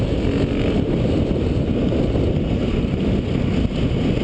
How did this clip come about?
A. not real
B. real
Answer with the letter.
B